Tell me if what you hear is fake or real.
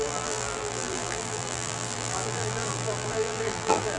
fake